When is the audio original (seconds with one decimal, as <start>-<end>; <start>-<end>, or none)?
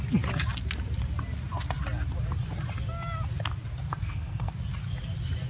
0.0-4.0; 4.5-5.5